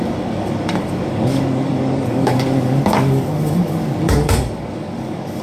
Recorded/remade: remade